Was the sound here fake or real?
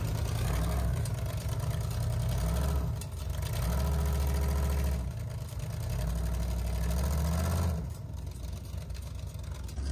real